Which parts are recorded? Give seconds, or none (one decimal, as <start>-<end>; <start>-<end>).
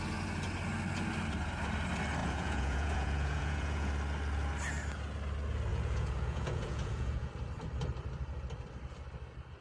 0.0-2.2; 3.9-5.7; 7.3-9.6